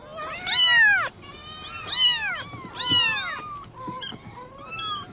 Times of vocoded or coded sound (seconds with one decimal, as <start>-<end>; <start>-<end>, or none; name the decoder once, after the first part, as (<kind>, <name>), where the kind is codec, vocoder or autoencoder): none